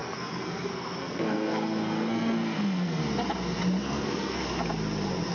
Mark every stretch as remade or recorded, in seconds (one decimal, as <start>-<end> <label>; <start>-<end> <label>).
0.0-3.0 remade; 3.0-3.8 recorded; 3.8-4.4 remade; 4.4-5.3 recorded